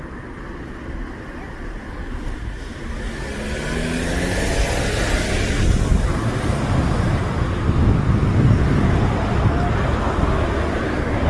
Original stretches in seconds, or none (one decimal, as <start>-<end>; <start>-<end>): 0.0-11.3